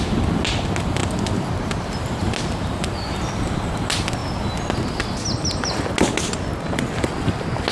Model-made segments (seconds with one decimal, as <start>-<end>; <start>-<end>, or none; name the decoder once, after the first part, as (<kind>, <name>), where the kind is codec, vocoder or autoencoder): none